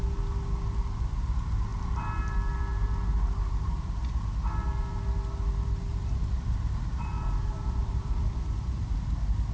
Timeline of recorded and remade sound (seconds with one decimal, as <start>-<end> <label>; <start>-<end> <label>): 0.0-2.7 recorded; 2.7-4.0 remade; 4.0-5.9 recorded; 5.9-8.3 remade; 8.3-9.5 recorded